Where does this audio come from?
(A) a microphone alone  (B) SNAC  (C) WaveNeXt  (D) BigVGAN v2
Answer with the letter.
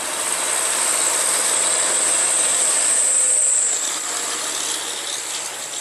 A